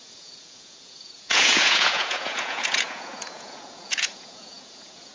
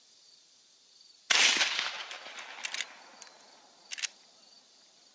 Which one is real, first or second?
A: second